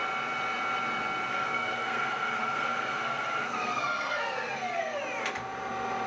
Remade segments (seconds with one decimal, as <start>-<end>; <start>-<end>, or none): 1.3-5.0

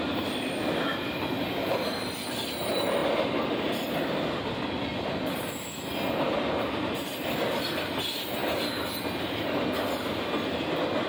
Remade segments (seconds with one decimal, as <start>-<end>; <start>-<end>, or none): none

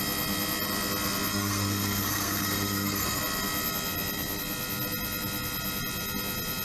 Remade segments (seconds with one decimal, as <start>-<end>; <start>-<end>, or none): 1.3-3.2